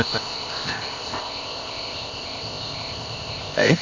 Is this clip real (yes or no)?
no